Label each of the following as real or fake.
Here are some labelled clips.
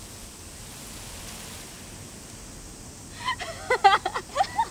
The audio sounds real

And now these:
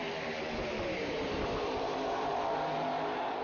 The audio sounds fake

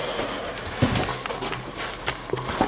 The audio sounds real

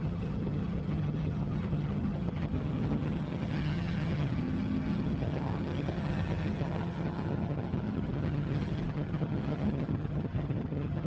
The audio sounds fake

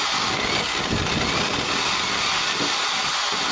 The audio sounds real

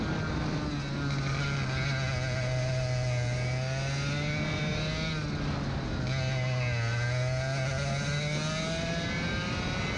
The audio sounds real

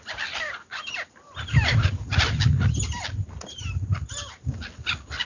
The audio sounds real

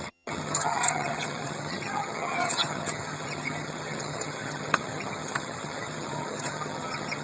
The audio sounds fake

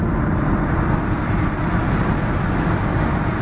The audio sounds real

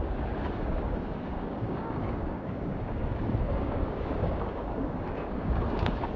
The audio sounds fake